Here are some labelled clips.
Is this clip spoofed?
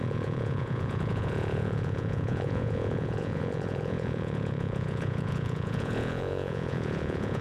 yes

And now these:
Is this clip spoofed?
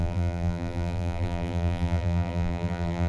yes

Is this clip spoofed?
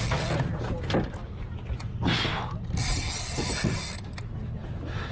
no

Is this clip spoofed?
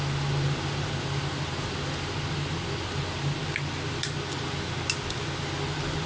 no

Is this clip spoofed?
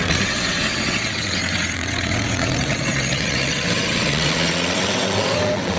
yes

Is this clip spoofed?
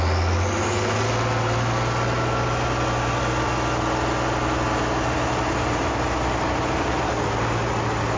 no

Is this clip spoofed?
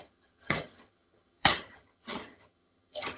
yes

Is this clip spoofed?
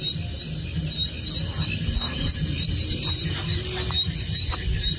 no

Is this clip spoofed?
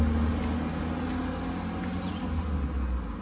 no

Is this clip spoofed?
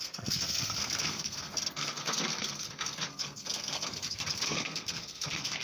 yes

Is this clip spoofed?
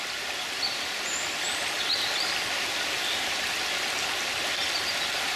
no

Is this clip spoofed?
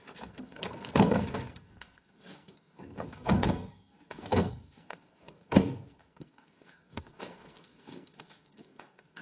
yes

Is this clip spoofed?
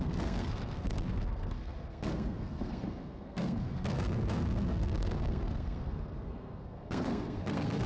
yes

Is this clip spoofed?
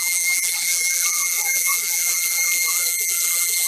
yes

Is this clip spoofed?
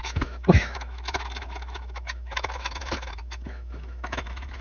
yes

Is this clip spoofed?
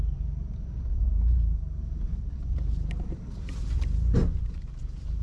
yes